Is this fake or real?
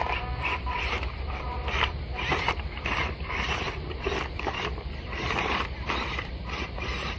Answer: fake